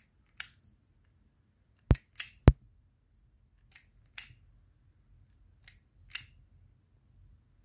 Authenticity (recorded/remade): recorded